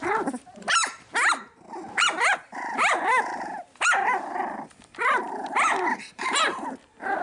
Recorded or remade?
remade